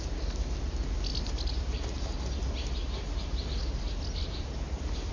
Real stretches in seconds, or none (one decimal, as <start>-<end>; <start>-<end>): 0.0-5.1